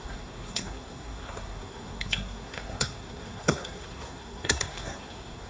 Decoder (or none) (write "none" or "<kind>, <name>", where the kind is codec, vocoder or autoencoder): codec, SNAC